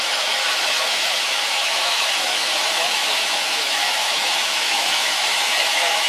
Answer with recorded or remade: remade